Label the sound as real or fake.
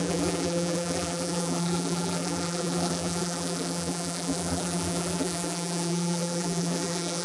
fake